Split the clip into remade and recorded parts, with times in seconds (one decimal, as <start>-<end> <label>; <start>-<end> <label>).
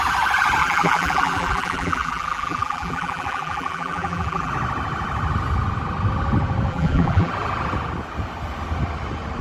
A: 0.0-0.6 recorded; 0.6-4.5 remade; 4.5-6.7 recorded; 6.7-7.3 remade; 7.3-9.4 recorded